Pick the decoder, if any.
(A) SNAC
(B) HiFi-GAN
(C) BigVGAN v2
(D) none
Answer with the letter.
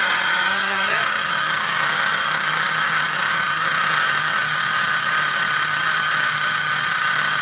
B